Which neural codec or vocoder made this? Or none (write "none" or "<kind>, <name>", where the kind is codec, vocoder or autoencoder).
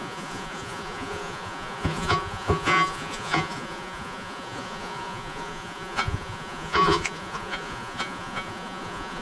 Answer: vocoder, Vocos